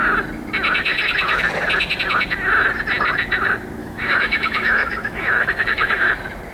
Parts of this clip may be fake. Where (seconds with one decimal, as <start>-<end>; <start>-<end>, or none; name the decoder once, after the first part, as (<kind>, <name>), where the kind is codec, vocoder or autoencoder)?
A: 3.8-6.1 (autoencoder, DAC-VAE)